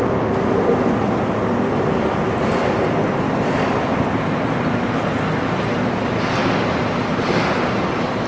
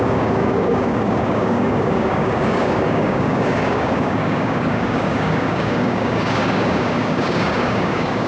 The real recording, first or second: first